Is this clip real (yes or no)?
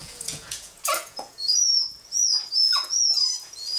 no